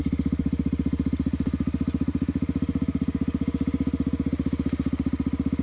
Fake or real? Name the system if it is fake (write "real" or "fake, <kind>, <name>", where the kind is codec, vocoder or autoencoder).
real